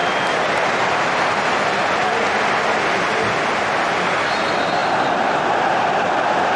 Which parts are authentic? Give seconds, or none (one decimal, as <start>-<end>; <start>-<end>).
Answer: 0.0-6.6